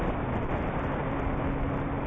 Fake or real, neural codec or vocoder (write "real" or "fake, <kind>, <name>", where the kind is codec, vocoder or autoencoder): real